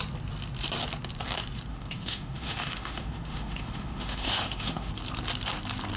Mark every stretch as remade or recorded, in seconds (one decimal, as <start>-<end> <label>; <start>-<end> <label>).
0.0-1.7 recorded; 1.7-4.9 remade; 4.9-6.0 recorded